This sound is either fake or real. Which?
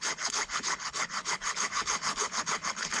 fake